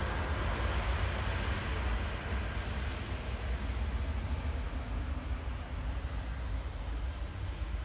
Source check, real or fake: real